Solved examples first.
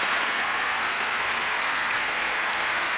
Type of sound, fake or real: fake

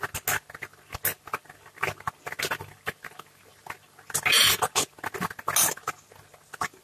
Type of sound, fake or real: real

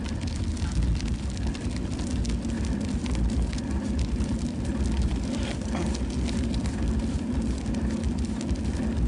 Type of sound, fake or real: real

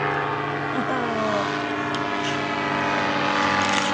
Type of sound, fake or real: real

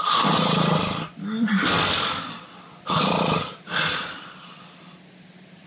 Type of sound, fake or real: real